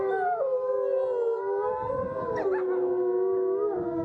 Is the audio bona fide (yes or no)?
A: yes